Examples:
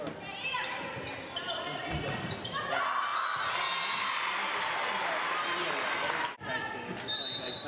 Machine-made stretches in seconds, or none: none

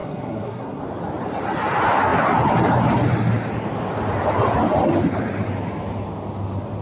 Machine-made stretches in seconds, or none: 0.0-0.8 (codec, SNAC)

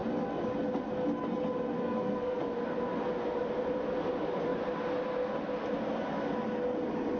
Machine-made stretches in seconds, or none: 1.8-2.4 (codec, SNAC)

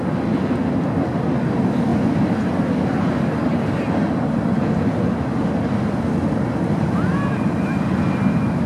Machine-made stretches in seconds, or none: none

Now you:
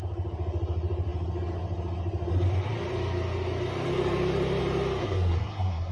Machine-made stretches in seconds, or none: 5.0-5.9 (codec, SNAC)

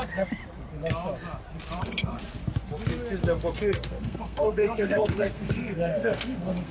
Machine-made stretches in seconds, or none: 0.0-0.4 (codec, SNAC); 1.8-2.4; 3.6-6.7